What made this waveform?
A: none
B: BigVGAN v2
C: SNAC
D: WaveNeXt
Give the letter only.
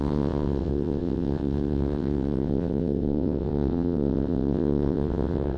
D